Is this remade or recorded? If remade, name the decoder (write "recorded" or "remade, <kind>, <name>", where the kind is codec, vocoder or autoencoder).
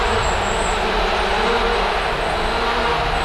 recorded